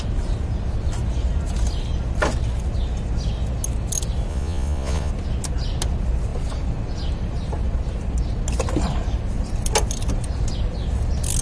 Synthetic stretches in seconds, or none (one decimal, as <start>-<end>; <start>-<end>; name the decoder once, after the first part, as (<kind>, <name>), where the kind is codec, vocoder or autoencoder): 4.3-5.1 (vocoder, Vocos)